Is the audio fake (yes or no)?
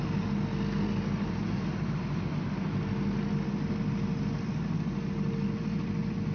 no